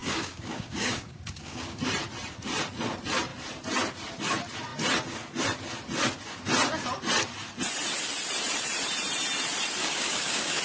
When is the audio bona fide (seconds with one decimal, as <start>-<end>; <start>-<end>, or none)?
1.8-9.8